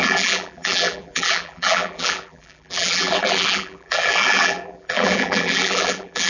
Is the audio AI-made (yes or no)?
yes